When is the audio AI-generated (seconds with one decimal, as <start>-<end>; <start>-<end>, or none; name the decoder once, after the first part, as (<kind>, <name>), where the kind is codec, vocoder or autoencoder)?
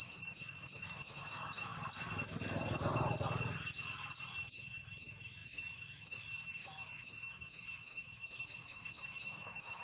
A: 0.0-1.7 (autoencoder, DAC-VAE); 4.3-9.8